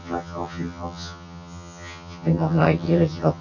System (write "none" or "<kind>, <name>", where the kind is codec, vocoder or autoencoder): vocoder, HiFi-GAN